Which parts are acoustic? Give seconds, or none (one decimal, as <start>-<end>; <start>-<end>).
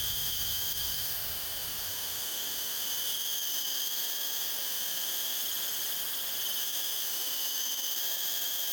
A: 5.4-6.6